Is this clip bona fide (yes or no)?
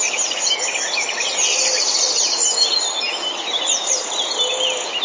yes